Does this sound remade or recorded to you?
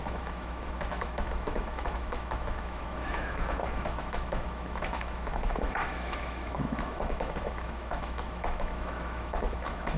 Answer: remade